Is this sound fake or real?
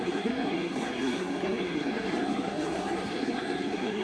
fake